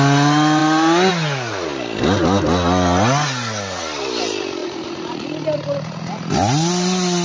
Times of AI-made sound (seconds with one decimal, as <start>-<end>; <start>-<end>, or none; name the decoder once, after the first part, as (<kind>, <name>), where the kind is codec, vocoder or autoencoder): 4.6-5.3 (vocoder, Vocos)